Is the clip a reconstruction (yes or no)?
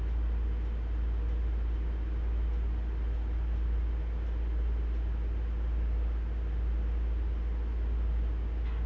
no